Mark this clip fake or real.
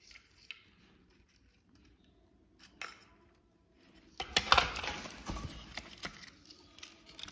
real